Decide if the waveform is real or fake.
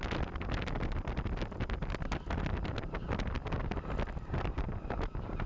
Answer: real